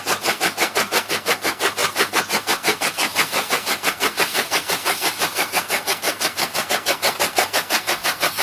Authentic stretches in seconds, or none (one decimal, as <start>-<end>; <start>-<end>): none